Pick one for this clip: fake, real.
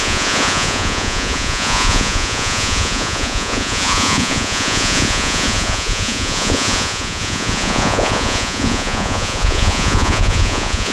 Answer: fake